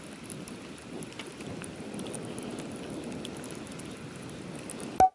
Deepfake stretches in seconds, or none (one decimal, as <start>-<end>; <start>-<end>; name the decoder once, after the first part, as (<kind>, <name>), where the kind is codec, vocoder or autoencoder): none